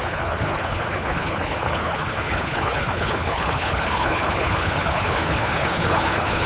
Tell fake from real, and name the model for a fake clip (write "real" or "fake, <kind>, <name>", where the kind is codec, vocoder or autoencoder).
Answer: fake, codec, HILCodec